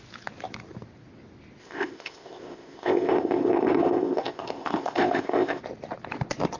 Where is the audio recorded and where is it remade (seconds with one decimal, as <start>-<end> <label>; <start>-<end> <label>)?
0.0-1.6 recorded; 1.6-5.6 remade; 5.6-6.6 recorded